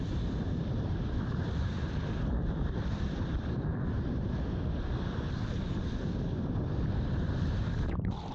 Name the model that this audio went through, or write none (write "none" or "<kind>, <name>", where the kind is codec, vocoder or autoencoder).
vocoder, BigVGAN v2